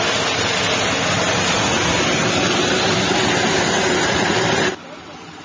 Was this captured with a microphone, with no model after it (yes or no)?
yes